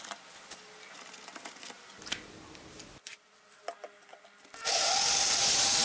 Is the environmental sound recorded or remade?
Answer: recorded